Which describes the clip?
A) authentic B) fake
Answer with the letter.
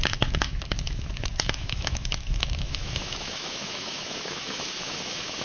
B